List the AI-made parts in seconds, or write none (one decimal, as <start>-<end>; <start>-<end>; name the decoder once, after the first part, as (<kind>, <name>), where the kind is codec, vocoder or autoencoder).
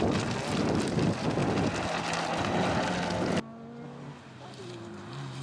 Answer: none